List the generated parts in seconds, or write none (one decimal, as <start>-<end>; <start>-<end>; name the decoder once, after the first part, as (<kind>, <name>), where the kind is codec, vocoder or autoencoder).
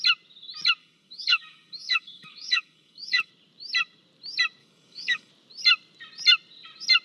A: 0.8-3.3 (codec, DAC); 4.6-5.3